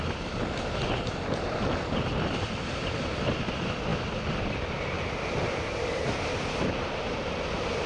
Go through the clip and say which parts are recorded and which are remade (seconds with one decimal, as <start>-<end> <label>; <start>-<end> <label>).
0.0-7.9 recorded